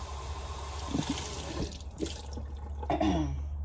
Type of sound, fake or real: real